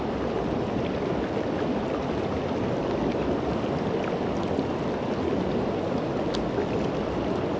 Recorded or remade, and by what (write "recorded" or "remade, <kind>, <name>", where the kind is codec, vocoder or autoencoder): recorded